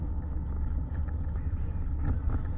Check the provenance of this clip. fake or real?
real